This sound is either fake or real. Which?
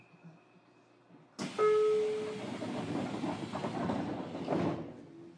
real